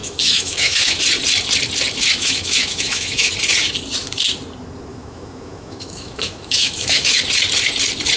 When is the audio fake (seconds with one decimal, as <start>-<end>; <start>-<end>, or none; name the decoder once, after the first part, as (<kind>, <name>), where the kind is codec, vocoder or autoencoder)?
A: 0.0-1.0 (autoencoder, DAC-VAE); 2.2-3.3; 4.9-7.2